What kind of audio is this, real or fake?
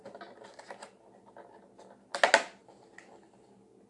real